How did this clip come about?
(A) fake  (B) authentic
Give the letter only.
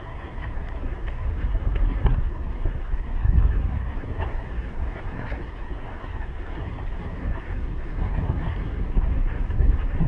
A